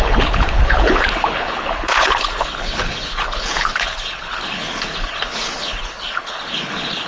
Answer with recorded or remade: remade